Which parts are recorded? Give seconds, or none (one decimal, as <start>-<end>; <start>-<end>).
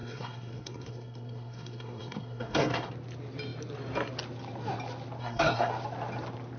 2.9-5.2; 5.7-6.6